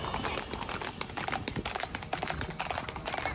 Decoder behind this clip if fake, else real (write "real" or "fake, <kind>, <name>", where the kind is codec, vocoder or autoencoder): real